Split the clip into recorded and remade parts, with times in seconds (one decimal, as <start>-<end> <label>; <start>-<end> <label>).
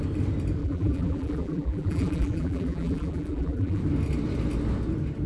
0.0-0.6 recorded; 0.6-3.8 remade; 3.8-5.3 recorded